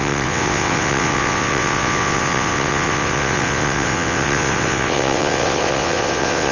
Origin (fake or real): fake